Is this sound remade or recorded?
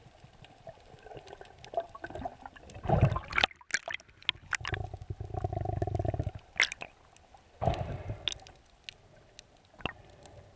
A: recorded